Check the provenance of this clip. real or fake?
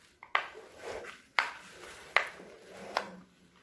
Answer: real